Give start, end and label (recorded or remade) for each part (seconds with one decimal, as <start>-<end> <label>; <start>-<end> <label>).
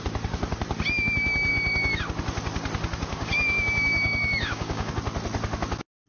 0.0-1.5 recorded; 1.5-2.0 remade; 2.0-3.1 recorded; 3.1-4.9 remade; 4.9-6.1 recorded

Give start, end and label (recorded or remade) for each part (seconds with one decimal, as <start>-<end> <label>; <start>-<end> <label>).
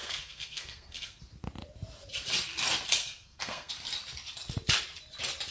0.0-1.2 remade; 1.2-3.0 recorded; 3.0-3.7 remade; 3.7-5.5 recorded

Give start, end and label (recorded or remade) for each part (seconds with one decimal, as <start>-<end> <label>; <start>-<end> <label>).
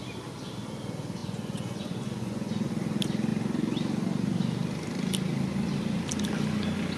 0.0-1.2 recorded; 1.2-2.7 remade; 2.7-7.0 recorded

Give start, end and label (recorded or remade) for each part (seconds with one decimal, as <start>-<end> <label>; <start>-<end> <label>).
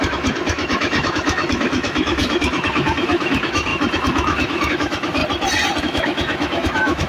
0.0-5.2 remade; 5.2-5.8 recorded; 5.8-7.1 remade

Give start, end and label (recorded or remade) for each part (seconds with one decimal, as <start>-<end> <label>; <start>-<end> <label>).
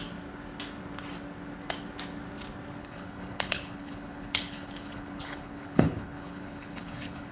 0.0-2.8 recorded; 2.8-7.3 remade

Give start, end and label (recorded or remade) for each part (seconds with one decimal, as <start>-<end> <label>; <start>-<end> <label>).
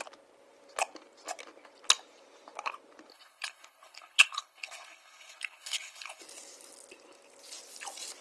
0.0-3.1 recorded; 3.1-6.2 remade; 6.2-8.2 recorded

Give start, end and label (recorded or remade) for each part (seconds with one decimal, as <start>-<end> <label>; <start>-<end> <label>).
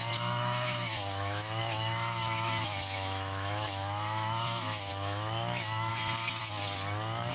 0.0-5.9 remade; 5.9-7.3 recorded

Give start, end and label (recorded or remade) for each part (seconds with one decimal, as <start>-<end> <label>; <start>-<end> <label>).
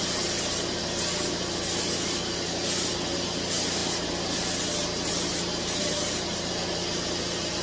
0.0-7.6 recorded